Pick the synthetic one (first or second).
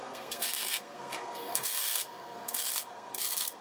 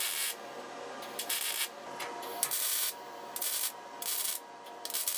first